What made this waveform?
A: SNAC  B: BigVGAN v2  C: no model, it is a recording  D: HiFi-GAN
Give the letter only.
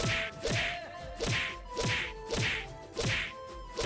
C